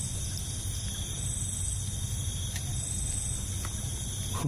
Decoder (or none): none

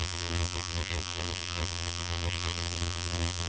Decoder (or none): vocoder, BigVGAN v2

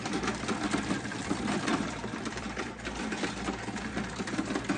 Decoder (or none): vocoder, BigVGAN v2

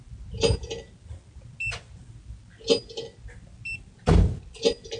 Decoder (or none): none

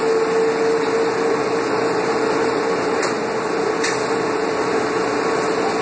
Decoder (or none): none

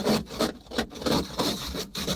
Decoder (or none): vocoder, BigVGAN v2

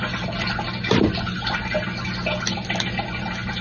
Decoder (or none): none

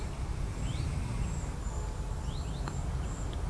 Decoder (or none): none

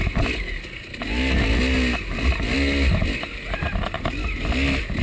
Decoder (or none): none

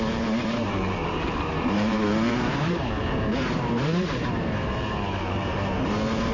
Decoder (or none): vocoder, BigVGAN v2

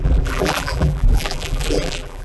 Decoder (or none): vocoder, BigVGAN v2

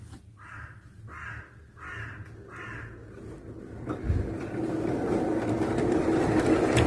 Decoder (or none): none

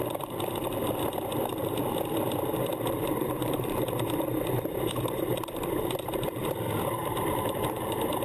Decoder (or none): vocoder, BigVGAN v2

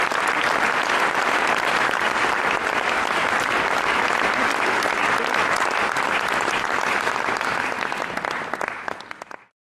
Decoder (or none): none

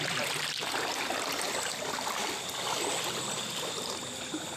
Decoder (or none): none